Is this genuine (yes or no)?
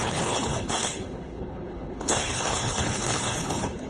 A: no